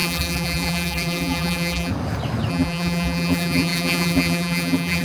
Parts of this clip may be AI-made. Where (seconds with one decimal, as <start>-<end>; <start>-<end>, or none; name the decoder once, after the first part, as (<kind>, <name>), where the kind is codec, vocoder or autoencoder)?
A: 0.0-1.9 (vocoder, BigVGAN v2); 2.5-5.0

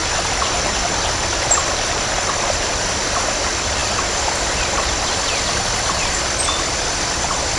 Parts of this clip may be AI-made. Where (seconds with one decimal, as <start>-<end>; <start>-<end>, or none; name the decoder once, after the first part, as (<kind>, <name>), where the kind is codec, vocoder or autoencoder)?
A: none

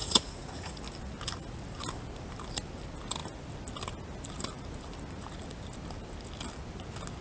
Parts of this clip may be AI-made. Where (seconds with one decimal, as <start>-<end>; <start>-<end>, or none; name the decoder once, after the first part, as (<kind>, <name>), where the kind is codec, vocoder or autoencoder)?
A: 0.0-0.8 (vocoder, Vocos)

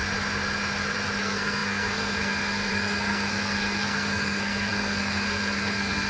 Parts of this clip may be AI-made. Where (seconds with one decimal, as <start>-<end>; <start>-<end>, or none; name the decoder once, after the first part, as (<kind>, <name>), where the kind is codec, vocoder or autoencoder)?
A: 1.2-6.1 (codec, SNAC)

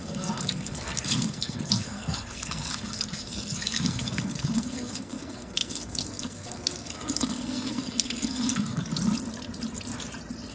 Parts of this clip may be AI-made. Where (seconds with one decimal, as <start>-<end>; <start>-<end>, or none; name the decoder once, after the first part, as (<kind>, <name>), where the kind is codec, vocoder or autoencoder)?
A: 0.0-8.9 (codec, SNAC)

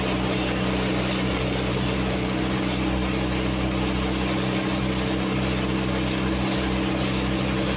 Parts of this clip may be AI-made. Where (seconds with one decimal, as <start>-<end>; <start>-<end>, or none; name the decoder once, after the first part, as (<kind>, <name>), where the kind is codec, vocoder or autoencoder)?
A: none